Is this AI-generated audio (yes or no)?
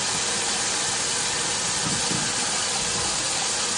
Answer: no